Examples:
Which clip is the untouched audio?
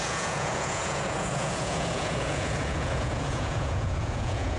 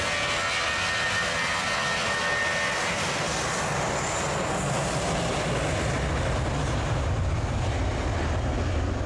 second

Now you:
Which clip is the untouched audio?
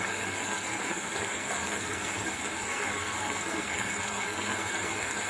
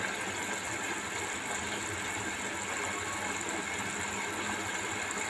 second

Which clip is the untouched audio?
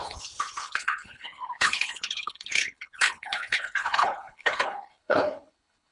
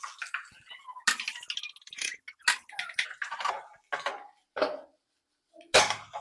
second